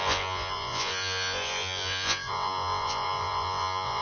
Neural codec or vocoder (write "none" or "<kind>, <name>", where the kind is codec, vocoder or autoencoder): vocoder, Vocos